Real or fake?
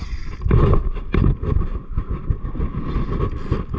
real